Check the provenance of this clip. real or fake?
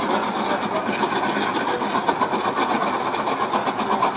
real